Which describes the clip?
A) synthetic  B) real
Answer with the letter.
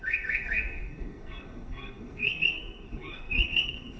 A